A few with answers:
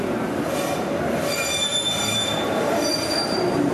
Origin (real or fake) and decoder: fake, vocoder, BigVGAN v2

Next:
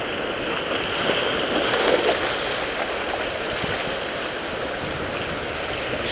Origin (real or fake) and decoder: real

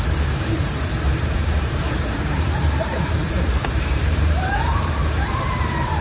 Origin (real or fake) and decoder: fake, vocoder, BigVGAN v2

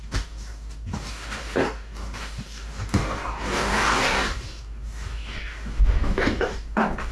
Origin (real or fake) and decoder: fake, codec, DAC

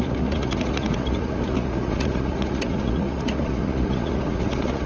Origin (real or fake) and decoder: fake, vocoder, Vocos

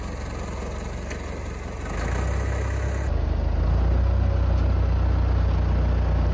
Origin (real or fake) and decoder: real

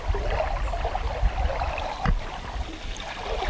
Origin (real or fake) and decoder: real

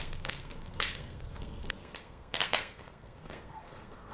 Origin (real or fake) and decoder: fake, codec, SNAC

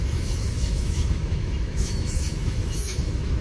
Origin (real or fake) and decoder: fake, autoencoder, DAC-VAE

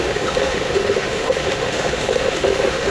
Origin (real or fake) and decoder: fake, autoencoder, DAC-VAE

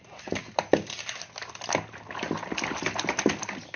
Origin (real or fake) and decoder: real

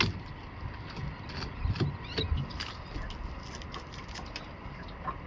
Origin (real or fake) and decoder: real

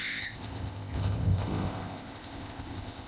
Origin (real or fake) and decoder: fake, codec, ZipCodec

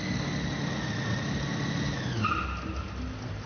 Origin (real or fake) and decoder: real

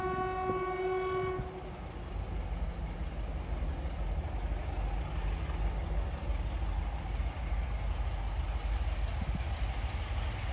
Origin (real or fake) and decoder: real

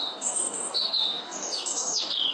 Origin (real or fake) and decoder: fake, codec, DAC